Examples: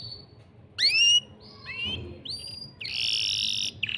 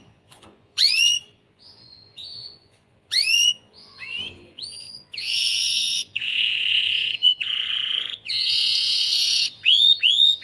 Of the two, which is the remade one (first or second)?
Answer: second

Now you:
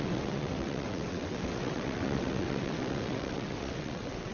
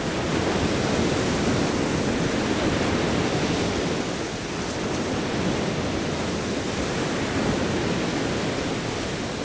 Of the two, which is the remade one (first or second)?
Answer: first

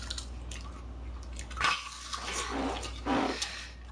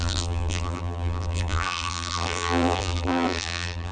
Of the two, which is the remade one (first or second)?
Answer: second